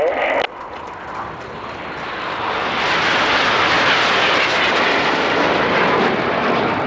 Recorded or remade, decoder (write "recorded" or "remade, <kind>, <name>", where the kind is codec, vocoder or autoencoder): recorded